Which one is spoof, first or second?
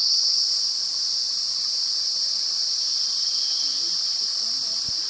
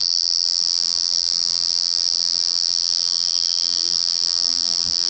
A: second